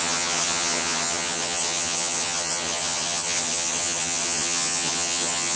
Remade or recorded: remade